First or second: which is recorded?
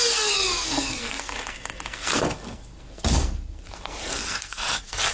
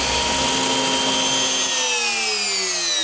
second